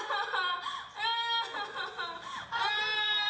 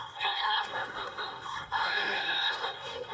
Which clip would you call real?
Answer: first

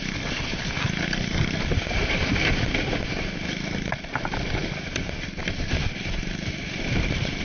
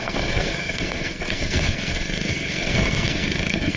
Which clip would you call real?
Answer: first